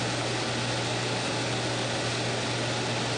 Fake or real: real